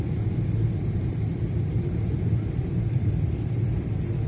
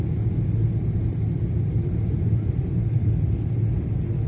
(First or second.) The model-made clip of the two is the first